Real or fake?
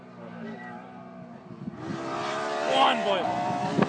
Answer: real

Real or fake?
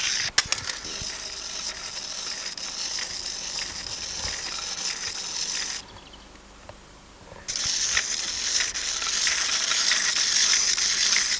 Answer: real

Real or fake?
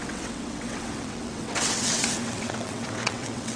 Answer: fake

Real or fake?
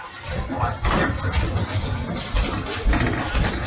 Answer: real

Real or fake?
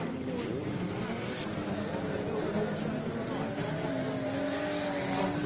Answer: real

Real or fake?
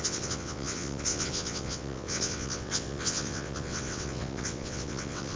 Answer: fake